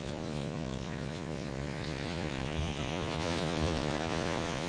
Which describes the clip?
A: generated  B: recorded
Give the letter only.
A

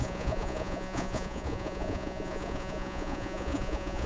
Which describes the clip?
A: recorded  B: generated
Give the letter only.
B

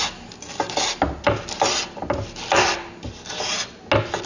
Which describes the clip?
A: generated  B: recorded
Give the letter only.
B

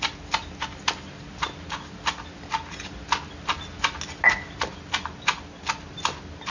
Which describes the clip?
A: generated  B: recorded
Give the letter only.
B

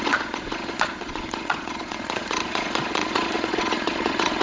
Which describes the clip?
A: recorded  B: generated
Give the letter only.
B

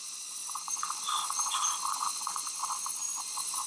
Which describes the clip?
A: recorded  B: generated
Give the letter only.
B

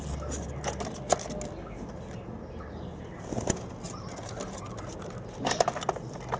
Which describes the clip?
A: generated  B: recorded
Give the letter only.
B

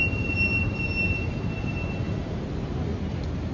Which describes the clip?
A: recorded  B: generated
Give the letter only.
A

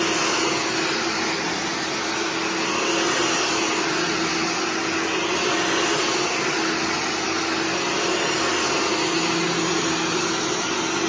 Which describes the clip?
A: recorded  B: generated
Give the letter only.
A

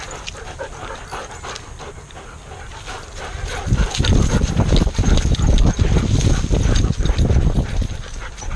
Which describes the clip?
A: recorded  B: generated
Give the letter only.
A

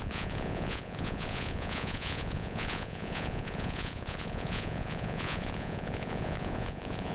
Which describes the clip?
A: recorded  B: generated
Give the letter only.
B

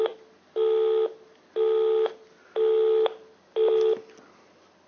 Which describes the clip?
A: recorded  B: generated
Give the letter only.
A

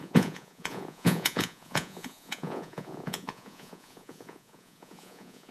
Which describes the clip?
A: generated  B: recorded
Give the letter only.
A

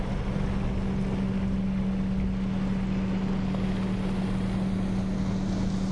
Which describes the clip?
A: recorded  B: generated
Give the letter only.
A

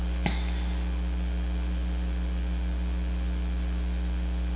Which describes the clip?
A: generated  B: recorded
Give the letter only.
B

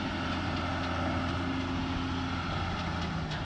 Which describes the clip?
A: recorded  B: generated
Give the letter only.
A